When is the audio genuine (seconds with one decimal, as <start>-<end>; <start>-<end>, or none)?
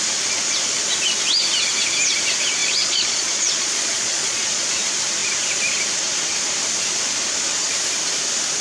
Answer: 0.0-2.6; 4.7-8.6